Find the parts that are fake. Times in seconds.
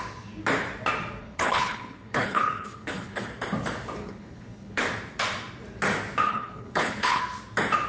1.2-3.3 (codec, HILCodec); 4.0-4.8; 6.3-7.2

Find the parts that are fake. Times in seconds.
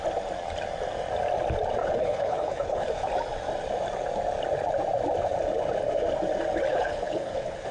1.8-3.1 (codec, HILCodec); 6.7-7.7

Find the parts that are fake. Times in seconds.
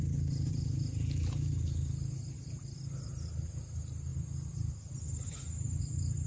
none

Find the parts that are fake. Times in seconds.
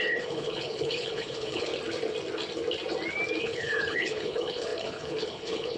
0.0-1.7 (codec, HILCodec); 3.4-5.8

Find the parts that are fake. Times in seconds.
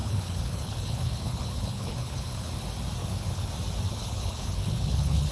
0.0-2.5 (codec, HILCodec); 3.0-3.5; 3.9-5.3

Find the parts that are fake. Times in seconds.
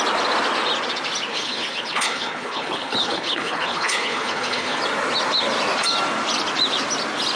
1.3-4.8 (codec, HILCodec)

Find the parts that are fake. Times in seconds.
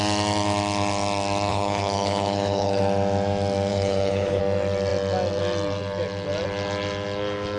1.5-2.8 (codec, HILCodec); 3.7-4.4